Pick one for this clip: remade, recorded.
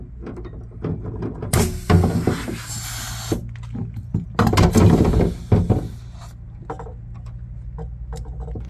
recorded